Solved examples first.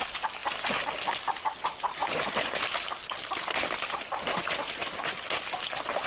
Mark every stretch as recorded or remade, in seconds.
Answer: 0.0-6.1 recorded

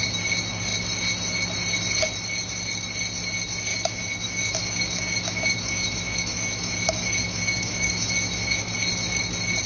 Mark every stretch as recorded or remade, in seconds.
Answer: 0.0-3.7 recorded; 3.7-8.7 remade; 8.7-9.7 recorded

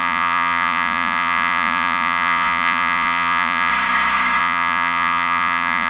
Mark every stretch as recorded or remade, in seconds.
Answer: 0.0-3.7 remade; 3.7-4.4 recorded; 4.4-5.9 remade

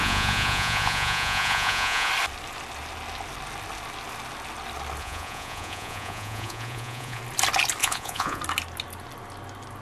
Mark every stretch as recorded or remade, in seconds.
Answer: 0.0-2.1 remade; 2.1-5.0 recorded; 5.0-7.2 remade; 7.2-7.8 recorded; 7.8-8.4 remade; 8.4-9.8 recorded

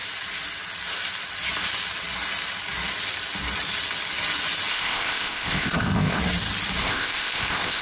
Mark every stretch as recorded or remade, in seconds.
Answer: 0.0-4.7 recorded; 4.7-6.2 remade; 6.2-6.8 recorded; 6.8-7.8 remade

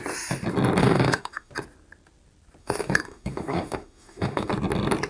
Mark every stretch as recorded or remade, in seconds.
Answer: 0.0-0.8 recorded; 0.8-1.5 remade; 1.5-2.6 recorded; 2.6-4.5 remade; 4.5-5.1 recorded

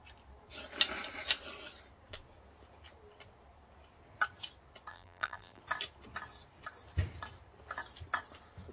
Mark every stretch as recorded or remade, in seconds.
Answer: 0.0-4.9 recorded; 4.9-5.6 remade; 5.6-8.7 recorded